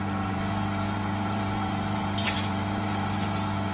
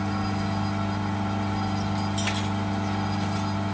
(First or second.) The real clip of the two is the second